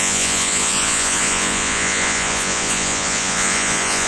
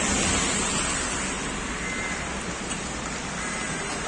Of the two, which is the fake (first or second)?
first